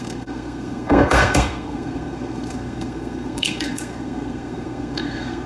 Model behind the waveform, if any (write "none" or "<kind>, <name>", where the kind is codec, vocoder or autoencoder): codec, SNAC